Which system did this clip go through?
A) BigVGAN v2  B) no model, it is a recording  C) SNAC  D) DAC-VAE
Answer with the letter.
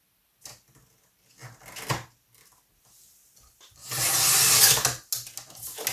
B